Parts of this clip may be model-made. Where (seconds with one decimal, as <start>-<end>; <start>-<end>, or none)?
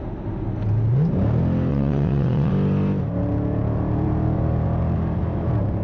1.7-2.5